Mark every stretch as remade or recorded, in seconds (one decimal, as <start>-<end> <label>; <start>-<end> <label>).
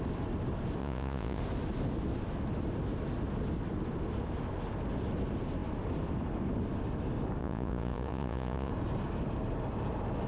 0.0-0.8 recorded; 0.8-1.4 remade; 1.4-7.4 recorded; 7.4-8.7 remade; 8.7-10.3 recorded